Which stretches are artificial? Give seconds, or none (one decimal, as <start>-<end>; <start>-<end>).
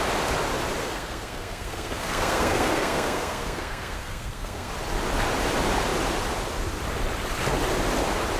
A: 0.8-4.7